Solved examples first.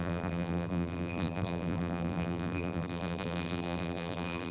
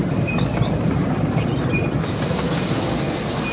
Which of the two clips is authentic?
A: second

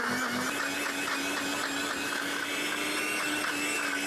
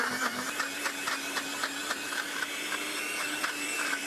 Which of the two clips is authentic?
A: first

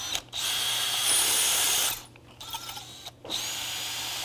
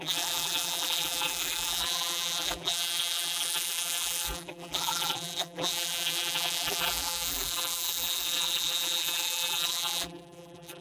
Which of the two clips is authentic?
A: first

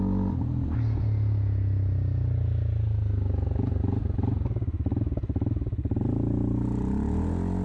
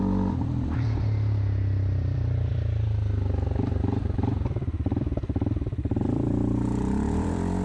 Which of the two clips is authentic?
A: first